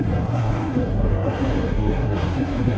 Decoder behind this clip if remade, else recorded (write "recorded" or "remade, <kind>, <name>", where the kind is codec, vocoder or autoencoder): remade, codec, SNAC